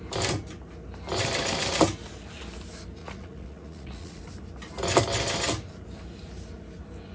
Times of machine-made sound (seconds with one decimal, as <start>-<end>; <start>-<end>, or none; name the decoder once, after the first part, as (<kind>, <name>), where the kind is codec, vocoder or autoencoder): 3.0-4.2 (vocoder, Vocos)